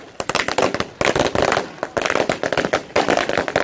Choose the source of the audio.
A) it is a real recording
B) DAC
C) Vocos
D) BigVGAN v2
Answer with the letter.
A